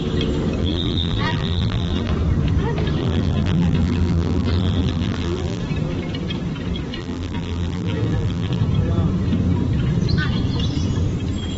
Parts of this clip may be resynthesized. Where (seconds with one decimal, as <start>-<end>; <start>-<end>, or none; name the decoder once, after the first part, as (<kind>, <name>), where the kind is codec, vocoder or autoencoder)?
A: 0.6-2.1 (vocoder, BigVGAN v2); 3.0-5.6; 7.0-8.6